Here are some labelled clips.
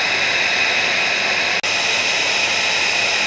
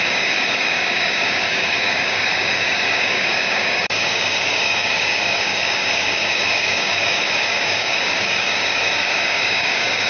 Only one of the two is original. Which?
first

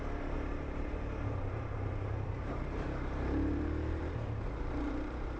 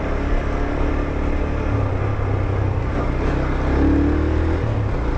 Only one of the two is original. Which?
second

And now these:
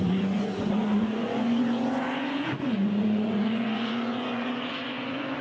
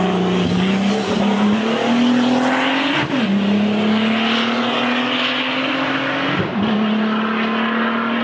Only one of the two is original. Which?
second